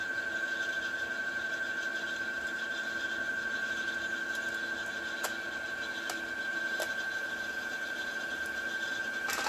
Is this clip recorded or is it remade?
recorded